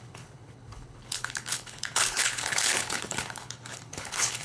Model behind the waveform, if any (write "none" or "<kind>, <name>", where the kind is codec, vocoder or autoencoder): codec, HILCodec